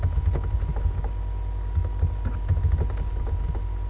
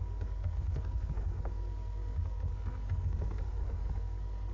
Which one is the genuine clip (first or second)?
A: first